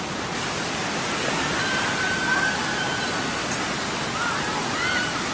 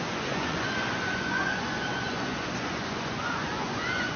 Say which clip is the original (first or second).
first